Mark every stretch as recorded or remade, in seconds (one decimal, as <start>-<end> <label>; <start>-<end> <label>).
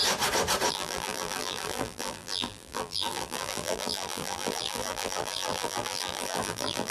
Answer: 0.0-0.7 recorded; 0.7-6.9 remade